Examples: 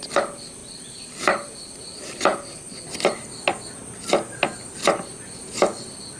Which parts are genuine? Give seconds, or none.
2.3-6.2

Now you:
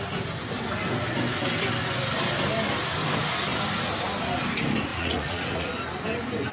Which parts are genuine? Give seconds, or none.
0.0-4.9; 5.7-6.5

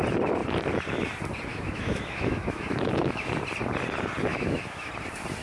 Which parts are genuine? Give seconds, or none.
0.0-1.5; 3.3-4.3; 4.9-5.4

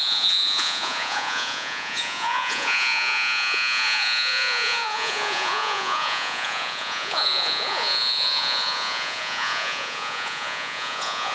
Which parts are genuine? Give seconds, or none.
none

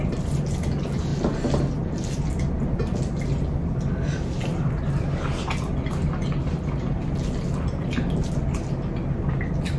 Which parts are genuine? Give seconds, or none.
0.0-9.8

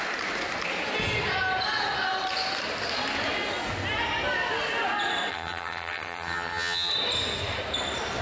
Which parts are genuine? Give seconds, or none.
0.0-5.3; 6.9-8.2

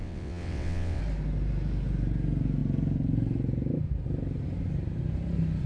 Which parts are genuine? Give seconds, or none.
1.0-5.7

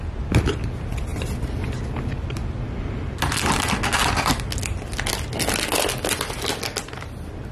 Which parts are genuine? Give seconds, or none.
0.0-7.5